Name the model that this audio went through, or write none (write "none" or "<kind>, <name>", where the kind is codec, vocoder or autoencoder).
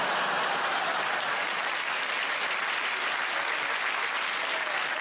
none